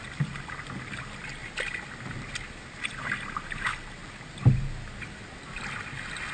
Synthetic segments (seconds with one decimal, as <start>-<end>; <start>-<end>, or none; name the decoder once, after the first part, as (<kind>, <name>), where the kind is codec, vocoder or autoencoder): none